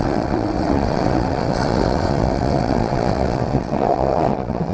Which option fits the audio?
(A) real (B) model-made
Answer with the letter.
B